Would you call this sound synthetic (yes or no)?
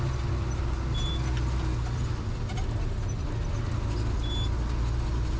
no